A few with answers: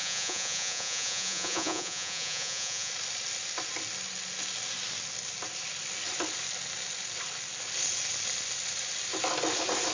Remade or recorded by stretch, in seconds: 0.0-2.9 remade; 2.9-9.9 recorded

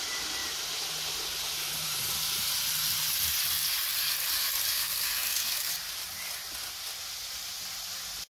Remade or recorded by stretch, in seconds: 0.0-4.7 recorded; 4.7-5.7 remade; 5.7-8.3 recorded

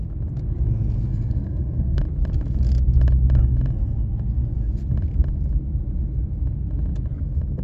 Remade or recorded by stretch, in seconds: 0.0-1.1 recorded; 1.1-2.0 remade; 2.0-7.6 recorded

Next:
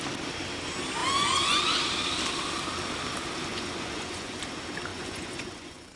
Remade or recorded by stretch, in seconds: 0.0-1.0 recorded; 1.0-1.6 remade; 1.6-3.5 recorded; 3.5-4.4 remade; 4.4-4.9 recorded; 4.9-6.0 remade

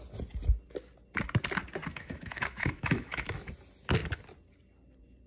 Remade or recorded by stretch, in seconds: 0.0-1.9 recorded; 1.9-3.5 remade; 3.5-5.3 recorded

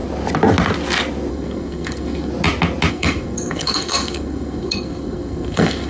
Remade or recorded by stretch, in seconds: 0.0-1.3 recorded; 1.3-2.3 remade; 2.3-2.9 recorded; 2.9-5.9 remade